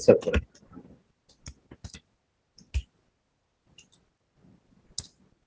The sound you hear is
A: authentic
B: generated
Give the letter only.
A